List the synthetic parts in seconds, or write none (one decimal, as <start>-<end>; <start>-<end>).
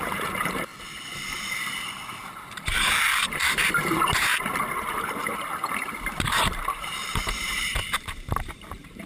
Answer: 0.0-0.7; 2.5-9.1